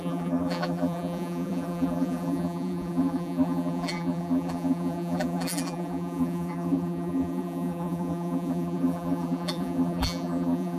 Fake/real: fake